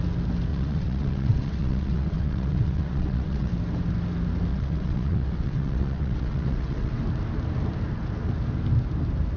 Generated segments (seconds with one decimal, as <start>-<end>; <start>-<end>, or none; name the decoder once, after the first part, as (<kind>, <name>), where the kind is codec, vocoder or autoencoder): 0.5-3.5 (vocoder, WaveNeXt); 4.5-7.0